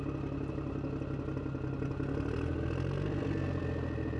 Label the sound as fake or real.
real